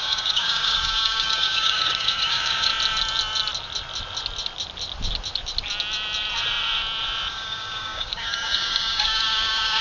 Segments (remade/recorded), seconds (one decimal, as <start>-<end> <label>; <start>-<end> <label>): 0.0-2.7 remade; 2.7-7.3 recorded; 7.3-9.8 remade